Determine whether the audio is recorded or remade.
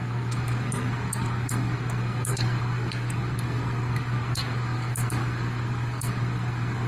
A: remade